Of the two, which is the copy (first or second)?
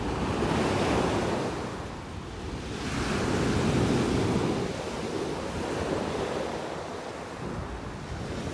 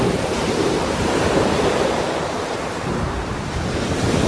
second